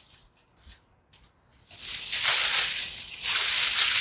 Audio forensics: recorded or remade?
recorded